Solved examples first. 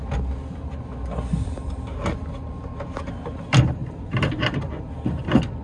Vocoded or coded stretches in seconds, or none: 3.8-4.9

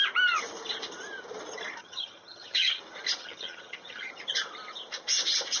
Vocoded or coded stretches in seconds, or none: 1.8-2.8; 3.2-4.1

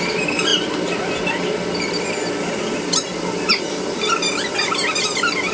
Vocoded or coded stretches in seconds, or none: none

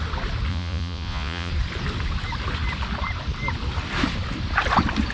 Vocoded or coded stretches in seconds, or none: 0.5-1.5

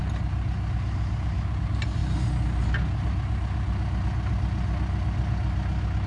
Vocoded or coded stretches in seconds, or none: none